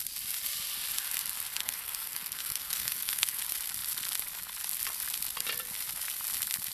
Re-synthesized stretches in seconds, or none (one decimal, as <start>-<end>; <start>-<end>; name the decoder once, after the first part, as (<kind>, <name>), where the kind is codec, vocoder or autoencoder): 1.6-3.4 (codec, SNAC)